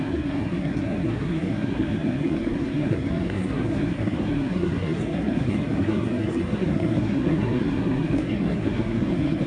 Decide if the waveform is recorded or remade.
remade